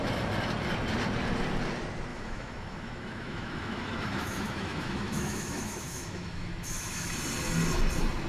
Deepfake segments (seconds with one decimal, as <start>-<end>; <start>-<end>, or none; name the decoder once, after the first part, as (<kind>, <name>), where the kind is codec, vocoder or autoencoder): 2.1-7.1 (autoencoder, DAC-VAE)